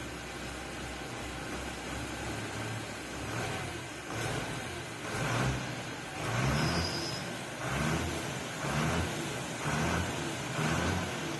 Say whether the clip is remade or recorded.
recorded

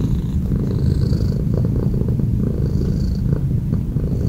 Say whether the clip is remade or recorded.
recorded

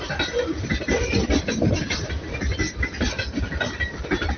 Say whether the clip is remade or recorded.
recorded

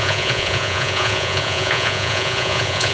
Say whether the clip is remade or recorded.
remade